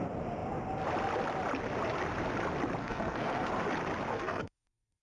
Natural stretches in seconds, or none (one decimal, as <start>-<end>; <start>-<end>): 0.0-2.8; 3.5-4.1